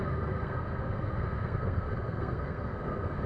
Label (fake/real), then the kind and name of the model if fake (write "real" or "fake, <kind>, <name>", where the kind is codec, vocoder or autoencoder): fake, codec, SNAC